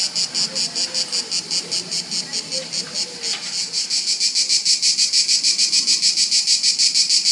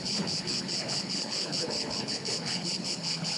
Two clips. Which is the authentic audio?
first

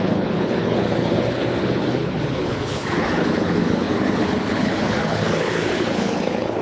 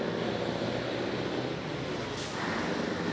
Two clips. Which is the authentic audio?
second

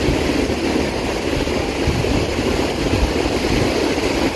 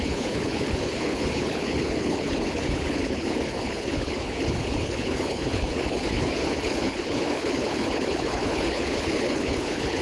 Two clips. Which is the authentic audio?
first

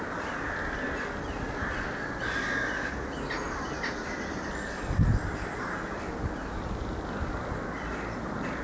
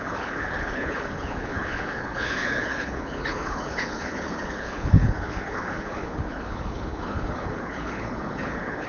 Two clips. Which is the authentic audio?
first